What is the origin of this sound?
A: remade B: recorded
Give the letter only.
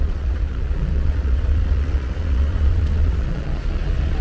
A